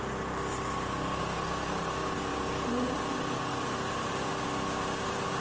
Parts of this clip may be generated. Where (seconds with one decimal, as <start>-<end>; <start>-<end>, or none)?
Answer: 2.3-3.0; 3.5-4.3